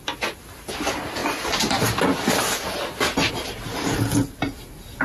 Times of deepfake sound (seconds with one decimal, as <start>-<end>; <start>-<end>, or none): none